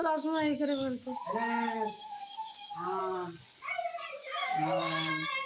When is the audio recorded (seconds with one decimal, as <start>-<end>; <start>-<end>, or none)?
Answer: 3.0-4.2; 5.1-5.5